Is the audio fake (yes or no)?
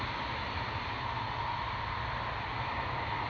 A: no